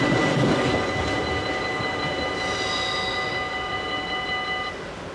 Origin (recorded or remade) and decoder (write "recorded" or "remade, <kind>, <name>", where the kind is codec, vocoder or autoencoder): recorded